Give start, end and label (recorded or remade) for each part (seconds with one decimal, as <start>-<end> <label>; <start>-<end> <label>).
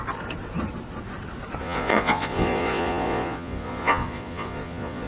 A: 0.0-1.6 recorded; 1.6-5.1 remade